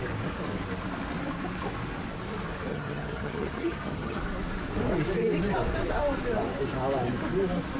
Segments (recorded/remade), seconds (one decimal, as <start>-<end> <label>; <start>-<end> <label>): 0.0-2.7 recorded; 2.7-4.2 remade; 4.2-7.8 recorded